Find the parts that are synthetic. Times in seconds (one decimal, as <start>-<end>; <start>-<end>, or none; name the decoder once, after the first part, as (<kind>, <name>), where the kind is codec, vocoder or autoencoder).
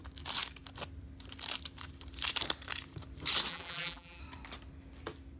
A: 3.5-4.2 (vocoder, BigVGAN v2)